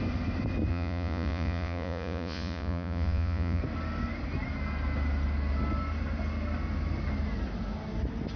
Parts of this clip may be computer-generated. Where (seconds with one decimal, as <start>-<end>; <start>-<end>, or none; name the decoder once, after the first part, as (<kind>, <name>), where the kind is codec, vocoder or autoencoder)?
0.7-3.6 (vocoder, Vocos)